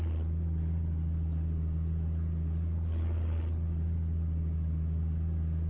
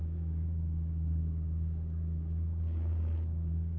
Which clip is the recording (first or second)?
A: first